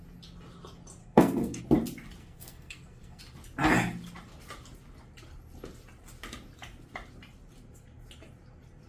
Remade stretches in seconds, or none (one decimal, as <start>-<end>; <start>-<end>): 1.0-1.6; 2.2-3.2